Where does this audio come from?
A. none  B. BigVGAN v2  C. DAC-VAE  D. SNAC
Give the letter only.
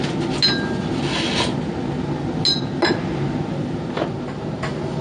A